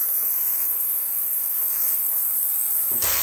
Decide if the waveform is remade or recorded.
remade